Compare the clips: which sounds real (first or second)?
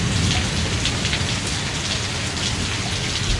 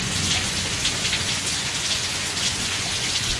first